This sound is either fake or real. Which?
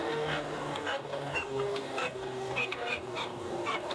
fake